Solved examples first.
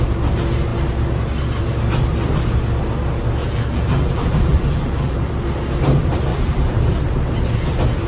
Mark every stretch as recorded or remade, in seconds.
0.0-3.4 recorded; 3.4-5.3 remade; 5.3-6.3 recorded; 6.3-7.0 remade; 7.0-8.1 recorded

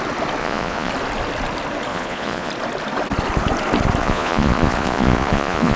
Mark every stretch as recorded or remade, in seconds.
0.0-0.4 recorded; 0.4-0.9 remade; 0.9-1.9 recorded; 1.9-2.5 remade; 2.5-4.0 recorded; 4.0-5.8 remade

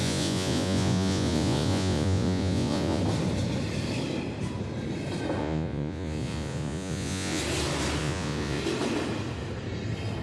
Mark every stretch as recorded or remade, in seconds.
0.0-3.0 remade; 3.0-5.4 recorded; 5.4-7.4 remade; 7.4-8.0 recorded; 8.0-8.6 remade; 8.6-10.2 recorded

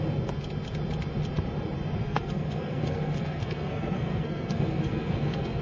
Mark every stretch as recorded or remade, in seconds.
0.0-2.0 recorded; 2.0-5.6 remade

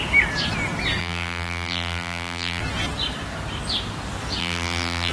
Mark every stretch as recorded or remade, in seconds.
0.0-1.0 recorded; 1.0-2.6 remade; 2.6-4.4 recorded; 4.4-5.1 remade

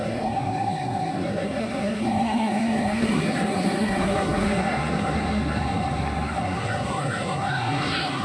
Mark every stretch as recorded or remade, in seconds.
0.0-8.2 remade